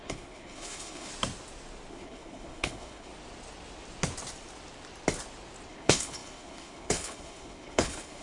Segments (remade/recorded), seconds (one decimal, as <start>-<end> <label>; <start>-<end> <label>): 0.0-1.1 remade; 1.1-1.9 recorded; 1.9-3.1 remade; 3.1-5.7 recorded; 5.7-8.2 remade

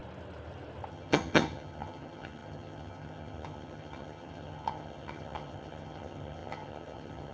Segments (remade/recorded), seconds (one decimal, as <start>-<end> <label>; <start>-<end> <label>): 0.0-0.9 recorded; 0.9-7.3 remade

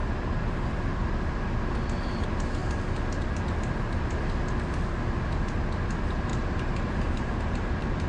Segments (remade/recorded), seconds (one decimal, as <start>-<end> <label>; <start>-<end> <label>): 0.0-0.7 remade; 0.7-6.3 recorded; 6.3-8.1 remade

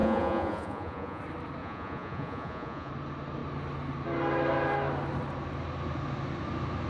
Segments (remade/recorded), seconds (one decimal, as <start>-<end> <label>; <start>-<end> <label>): 0.0-1.2 remade; 1.2-1.6 recorded; 1.6-2.9 remade; 2.9-6.9 recorded

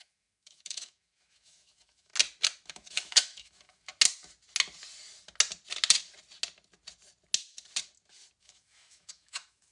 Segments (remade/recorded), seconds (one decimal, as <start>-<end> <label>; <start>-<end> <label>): 0.0-2.1 remade; 2.1-2.7 recorded; 2.7-3.9 remade; 3.9-8.4 recorded; 8.4-9.7 remade

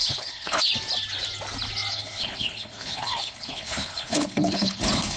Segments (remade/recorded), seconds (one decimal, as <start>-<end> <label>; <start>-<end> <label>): 0.0-0.7 remade; 0.7-1.9 recorded; 1.9-5.2 remade

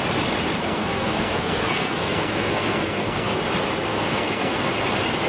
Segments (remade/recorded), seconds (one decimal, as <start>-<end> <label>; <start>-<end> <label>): 0.0-0.6 recorded; 0.6-3.4 remade; 3.4-3.9 recorded; 3.9-4.7 remade; 4.7-5.3 recorded